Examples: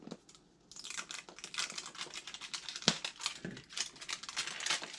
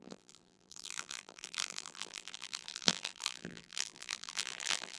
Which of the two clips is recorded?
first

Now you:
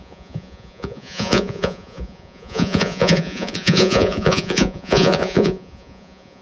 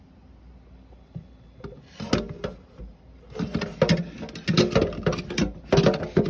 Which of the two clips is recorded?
second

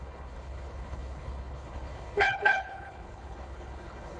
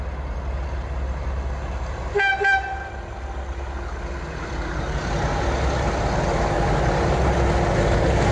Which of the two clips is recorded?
second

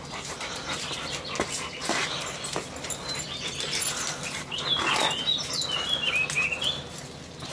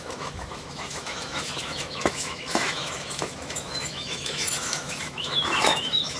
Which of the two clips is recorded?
first